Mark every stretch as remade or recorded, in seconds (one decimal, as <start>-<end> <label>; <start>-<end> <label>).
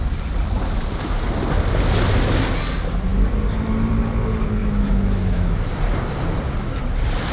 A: 0.0-4.6 recorded; 4.6-5.6 remade; 5.6-7.3 recorded